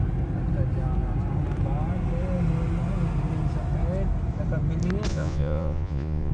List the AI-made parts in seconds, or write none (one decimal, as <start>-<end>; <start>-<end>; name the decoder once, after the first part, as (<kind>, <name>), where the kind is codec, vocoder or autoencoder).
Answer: 5.1-6.3 (vocoder, Vocos)